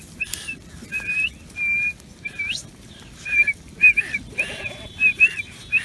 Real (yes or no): no